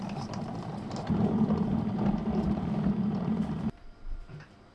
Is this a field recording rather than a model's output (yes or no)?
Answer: no